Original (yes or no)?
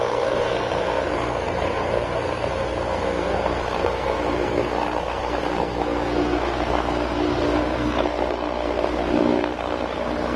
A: no